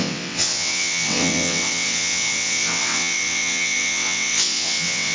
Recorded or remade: remade